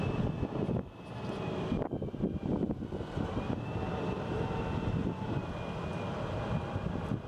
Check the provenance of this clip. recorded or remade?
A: recorded